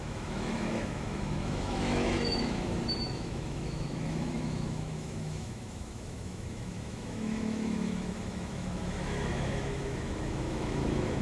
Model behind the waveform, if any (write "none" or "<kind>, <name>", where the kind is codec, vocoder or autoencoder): autoencoder, DAC-VAE